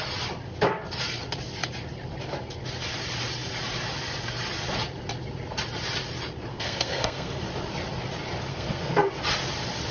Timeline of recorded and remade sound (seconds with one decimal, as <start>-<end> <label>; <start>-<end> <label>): 0.0-6.5 recorded; 6.5-7.5 remade; 7.5-8.5 recorded; 8.5-9.1 remade; 9.1-9.9 recorded